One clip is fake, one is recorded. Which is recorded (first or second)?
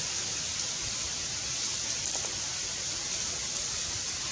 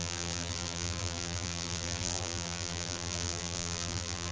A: first